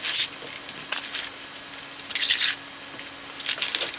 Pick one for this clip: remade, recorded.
recorded